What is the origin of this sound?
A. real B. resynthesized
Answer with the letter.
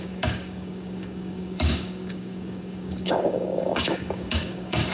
B